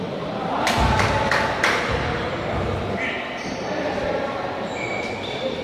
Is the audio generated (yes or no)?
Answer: yes